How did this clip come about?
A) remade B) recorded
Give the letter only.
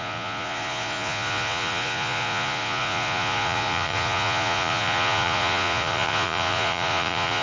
A